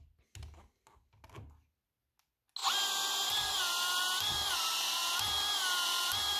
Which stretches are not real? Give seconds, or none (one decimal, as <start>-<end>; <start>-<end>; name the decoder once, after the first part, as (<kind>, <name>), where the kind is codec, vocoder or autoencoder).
none

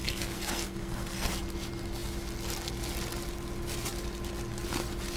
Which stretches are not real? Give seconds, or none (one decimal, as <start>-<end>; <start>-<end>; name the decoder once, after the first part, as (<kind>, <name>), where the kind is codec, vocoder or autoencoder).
0.0-1.3 (codec, SNAC)